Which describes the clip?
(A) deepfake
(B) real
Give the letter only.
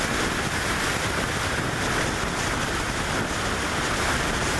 B